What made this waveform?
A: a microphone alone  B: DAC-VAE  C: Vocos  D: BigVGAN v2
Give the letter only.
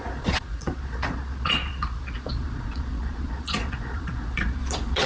C